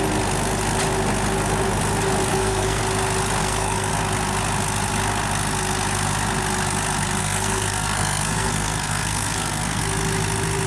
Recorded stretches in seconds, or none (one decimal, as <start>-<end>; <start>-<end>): 0.0-2.3; 2.8-3.4; 3.9-7.2; 9.8-10.7